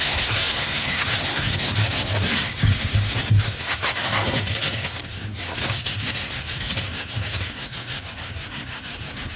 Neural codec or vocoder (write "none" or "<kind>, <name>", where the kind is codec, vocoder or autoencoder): codec, SNAC